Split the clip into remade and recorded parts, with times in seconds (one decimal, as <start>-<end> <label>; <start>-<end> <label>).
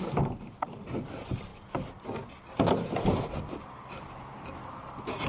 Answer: 0.0-5.3 recorded